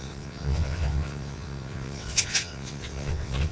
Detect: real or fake fake